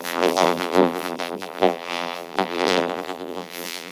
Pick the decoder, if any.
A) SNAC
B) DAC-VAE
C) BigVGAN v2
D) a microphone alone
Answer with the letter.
C